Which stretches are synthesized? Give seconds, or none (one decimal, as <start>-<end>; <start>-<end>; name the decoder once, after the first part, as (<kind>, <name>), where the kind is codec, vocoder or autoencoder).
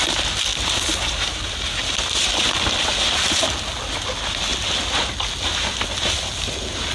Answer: none